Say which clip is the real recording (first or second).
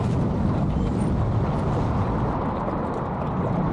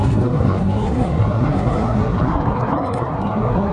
first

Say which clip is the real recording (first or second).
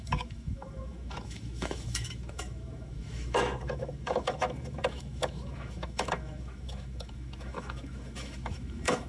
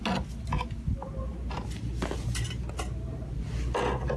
second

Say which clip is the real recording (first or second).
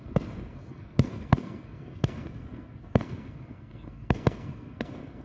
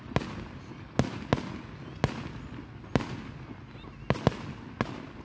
second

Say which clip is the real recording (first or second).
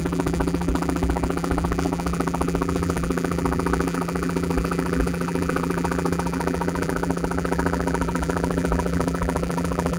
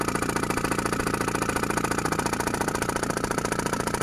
second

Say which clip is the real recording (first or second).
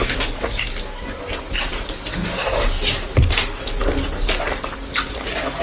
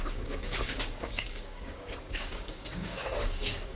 first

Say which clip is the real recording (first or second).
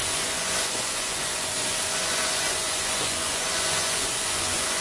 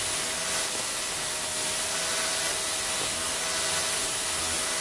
second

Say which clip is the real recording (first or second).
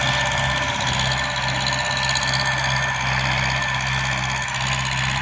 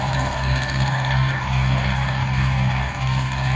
first